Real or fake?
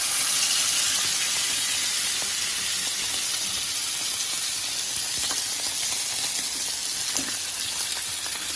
real